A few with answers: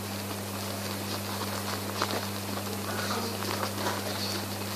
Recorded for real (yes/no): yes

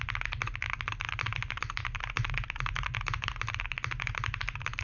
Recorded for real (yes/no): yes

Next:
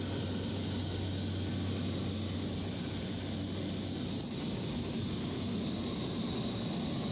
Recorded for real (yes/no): yes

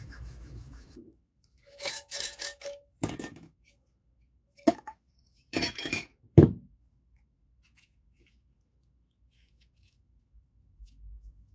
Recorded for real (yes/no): no